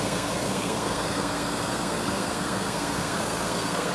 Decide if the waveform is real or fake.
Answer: fake